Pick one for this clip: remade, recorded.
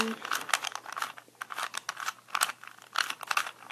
recorded